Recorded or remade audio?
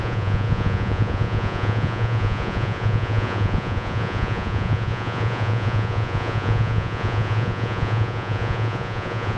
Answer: remade